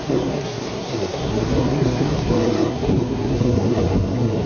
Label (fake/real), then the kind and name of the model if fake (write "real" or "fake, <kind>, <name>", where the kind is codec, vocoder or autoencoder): fake, codec, SNAC